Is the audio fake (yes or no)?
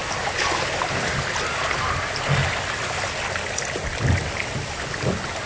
no